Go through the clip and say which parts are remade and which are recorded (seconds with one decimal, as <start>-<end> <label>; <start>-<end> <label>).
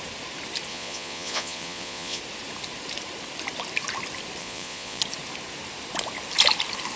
0.0-0.7 recorded; 0.7-2.2 remade; 2.2-4.4 recorded; 4.4-5.0 remade; 5.0-7.0 recorded